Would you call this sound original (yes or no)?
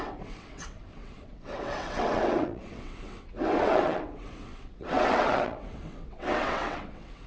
no